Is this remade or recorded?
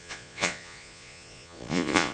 remade